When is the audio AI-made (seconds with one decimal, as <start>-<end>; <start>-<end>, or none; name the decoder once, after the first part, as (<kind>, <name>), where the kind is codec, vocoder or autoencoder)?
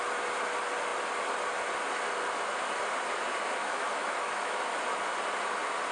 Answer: 3.6-4.6 (autoencoder, DAC-VAE)